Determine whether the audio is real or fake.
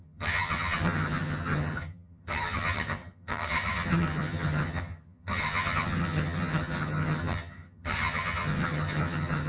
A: fake